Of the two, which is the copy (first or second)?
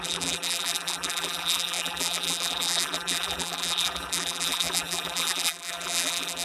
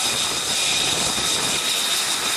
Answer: first